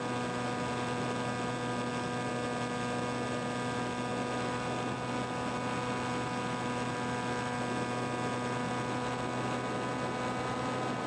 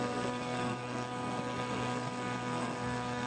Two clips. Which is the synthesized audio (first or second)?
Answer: second